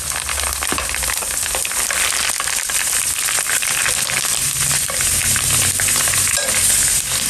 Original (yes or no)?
yes